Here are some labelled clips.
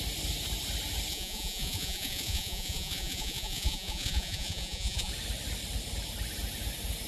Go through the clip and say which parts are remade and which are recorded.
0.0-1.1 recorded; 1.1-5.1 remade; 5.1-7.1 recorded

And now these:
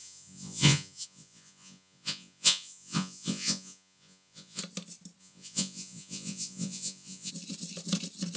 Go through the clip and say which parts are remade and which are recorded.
0.0-4.6 remade; 4.6-5.2 recorded; 5.2-7.3 remade; 7.3-8.4 recorded

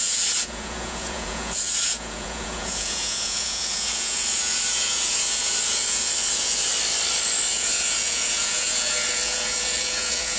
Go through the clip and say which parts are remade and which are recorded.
0.0-6.7 remade; 6.7-7.5 recorded; 7.5-10.4 remade

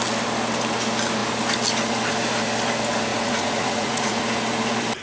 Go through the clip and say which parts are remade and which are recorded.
0.0-3.1 recorded; 3.1-4.2 remade; 4.2-5.0 recorded